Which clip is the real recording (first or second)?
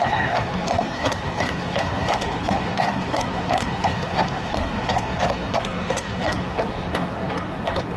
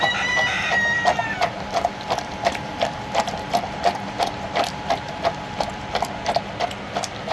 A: second